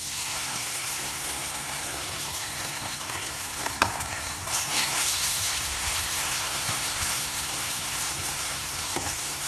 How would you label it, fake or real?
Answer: fake